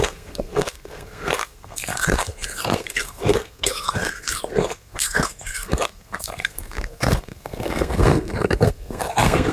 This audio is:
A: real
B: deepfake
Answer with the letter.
B